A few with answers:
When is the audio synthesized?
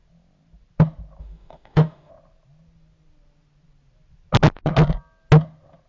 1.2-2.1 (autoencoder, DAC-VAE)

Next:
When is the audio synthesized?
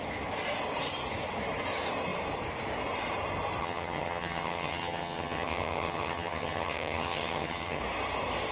3.6-7.8 (vocoder, HiFi-GAN)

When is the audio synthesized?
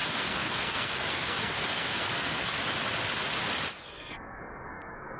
0.0-2.6 (codec, SNAC); 3.8-5.2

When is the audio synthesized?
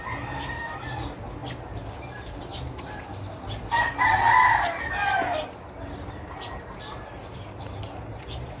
none